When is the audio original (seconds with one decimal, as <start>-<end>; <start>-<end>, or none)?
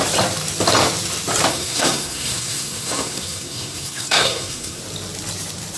0.0-1.5; 4.8-5.8